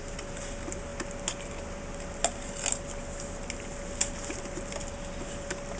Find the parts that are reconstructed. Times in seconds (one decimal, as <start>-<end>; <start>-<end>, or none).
none

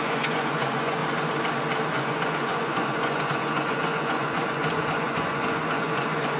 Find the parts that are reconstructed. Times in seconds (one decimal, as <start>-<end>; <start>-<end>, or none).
0.0-1.0; 1.9-6.4